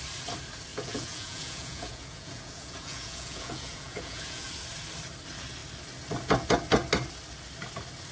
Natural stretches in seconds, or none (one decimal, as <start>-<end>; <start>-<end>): 0.0-0.7; 4.5-8.1

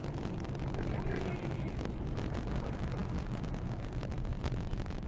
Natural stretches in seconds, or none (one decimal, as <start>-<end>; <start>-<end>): 0.0-5.1

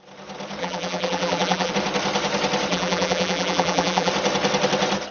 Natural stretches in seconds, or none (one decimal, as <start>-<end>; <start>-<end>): 0.0-0.6; 1.7-2.7; 4.1-5.1

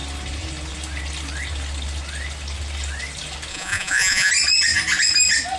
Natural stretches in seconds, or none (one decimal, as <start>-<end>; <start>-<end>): 0.0-3.5; 4.3-5.6

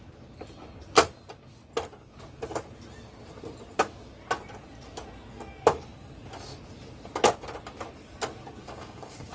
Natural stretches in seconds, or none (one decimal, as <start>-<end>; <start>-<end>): 0.0-8.6

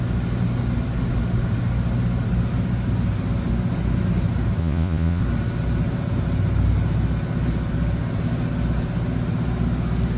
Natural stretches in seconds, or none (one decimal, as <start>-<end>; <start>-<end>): 0.0-4.6; 5.2-10.2

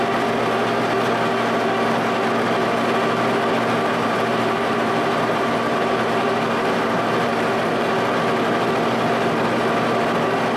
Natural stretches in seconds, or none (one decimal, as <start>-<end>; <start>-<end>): 0.0-3.9; 7.9-10.6

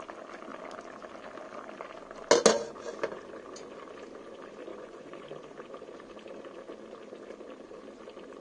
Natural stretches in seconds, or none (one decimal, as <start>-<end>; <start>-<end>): 0.0-4.7; 5.3-8.4